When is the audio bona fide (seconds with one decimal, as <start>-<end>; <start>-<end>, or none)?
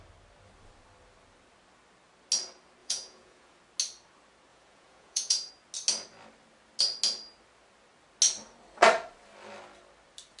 0.0-2.8; 3.6-4.5; 5.5-10.4